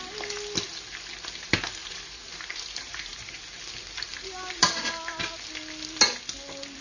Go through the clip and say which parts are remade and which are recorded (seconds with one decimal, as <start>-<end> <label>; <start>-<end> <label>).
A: 0.0-1.8 recorded; 1.8-3.4 remade; 3.4-4.1 recorded; 4.1-5.2 remade; 5.2-6.8 recorded